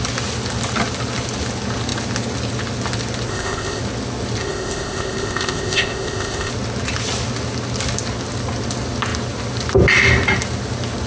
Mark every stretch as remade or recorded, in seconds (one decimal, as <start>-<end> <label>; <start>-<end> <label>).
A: 0.0-3.3 recorded; 3.3-3.8 remade; 3.8-4.4 recorded; 4.4-6.5 remade; 6.5-11.1 recorded